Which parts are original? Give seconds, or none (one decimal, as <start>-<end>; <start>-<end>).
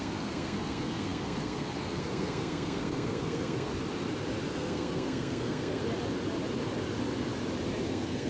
3.7-4.5; 5.8-7.9